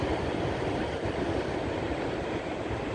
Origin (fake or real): real